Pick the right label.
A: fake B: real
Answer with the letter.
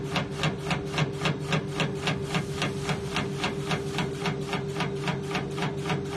B